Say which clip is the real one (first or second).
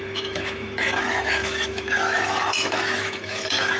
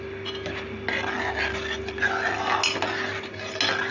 second